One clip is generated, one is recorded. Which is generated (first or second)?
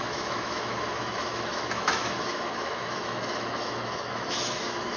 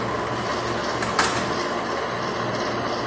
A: first